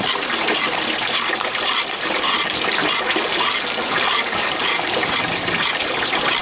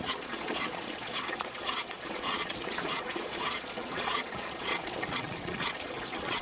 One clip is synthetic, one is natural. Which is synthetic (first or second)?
second